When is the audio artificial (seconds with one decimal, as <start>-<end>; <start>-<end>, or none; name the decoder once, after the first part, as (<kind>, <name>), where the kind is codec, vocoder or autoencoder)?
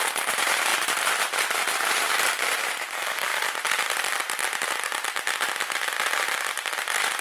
0.0-3.3 (vocoder, BigVGAN v2); 6.7-7.2